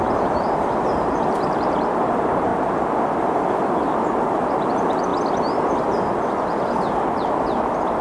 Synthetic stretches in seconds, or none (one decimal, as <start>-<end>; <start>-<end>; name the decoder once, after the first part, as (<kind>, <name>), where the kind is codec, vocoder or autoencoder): 0.0-2.5 (vocoder, BigVGAN v2); 4.2-5.1; 7.1-8.0